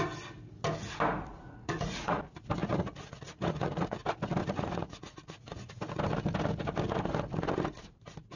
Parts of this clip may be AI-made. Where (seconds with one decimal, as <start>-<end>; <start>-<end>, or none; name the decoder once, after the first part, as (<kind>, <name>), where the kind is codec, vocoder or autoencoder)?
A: 1.3-2.2 (vocoder, Vocos); 2.6-4.0; 4.4-5.7